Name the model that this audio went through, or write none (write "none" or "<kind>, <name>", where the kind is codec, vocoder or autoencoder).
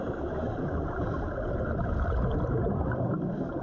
vocoder, BigVGAN v2